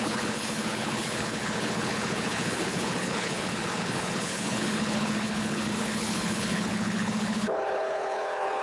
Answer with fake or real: fake